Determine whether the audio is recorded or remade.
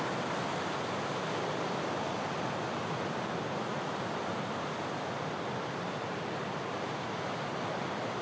recorded